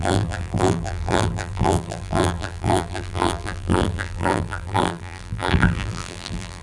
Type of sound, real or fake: fake